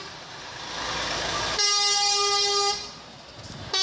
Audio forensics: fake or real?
real